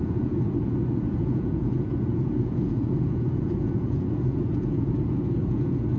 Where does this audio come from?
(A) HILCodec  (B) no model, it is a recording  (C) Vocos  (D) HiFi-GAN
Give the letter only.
C